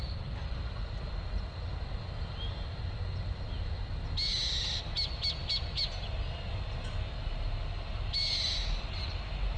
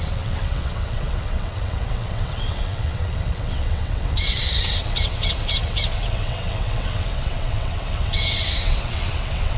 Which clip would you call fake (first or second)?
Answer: second